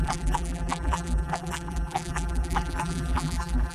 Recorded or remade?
remade